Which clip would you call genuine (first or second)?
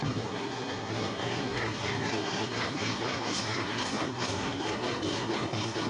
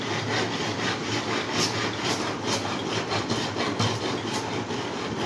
second